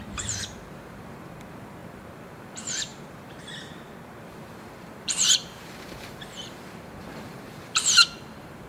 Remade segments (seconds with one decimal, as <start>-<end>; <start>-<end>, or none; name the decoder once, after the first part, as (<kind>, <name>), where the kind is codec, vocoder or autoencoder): 0.0-8.7 (vocoder, BigVGAN v2)